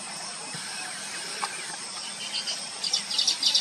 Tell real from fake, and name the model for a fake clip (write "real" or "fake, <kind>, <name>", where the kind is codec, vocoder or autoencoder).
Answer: real